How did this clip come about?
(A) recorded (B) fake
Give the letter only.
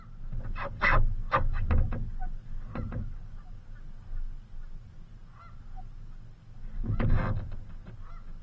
A